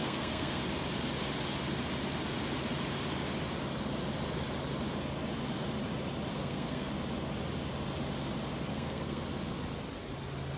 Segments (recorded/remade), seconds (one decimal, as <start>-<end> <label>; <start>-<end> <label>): 0.0-0.6 remade; 0.6-6.3 recorded; 6.3-6.9 remade; 6.9-8.7 recorded; 8.7-9.2 remade; 9.2-10.6 recorded